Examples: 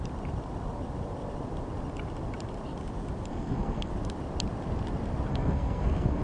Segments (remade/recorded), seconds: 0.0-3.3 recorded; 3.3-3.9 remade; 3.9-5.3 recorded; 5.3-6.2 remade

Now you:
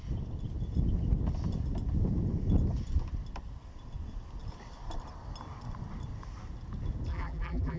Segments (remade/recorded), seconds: 0.0-7.1 recorded; 7.1-7.8 remade

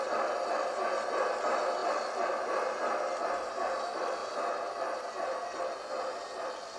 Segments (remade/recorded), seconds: 0.0-6.8 recorded

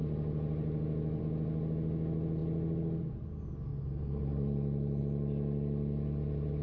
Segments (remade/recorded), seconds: 0.0-6.6 recorded

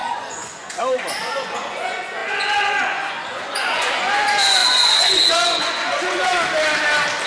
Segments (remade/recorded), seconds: 0.0-6.3 remade; 6.3-7.3 recorded

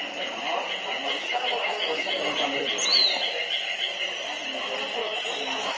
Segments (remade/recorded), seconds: 0.0-1.2 recorded; 1.2-2.2 remade; 2.2-5.0 recorded; 5.0-5.8 remade

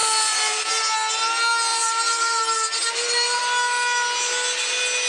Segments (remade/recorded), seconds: 0.0-0.8 remade; 0.8-1.7 recorded; 1.7-2.4 remade; 2.4-2.8 recorded; 2.8-3.4 remade; 3.4-5.1 recorded